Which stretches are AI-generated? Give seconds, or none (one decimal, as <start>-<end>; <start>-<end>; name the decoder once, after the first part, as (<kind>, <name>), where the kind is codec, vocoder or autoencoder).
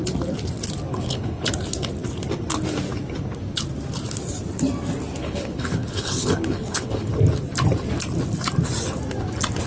0.9-1.5 (codec, HILCodec); 5.2-7.1